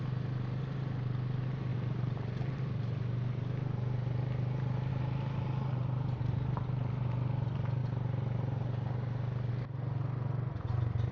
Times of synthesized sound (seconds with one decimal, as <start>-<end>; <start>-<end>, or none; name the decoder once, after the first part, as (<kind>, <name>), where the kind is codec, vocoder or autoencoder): none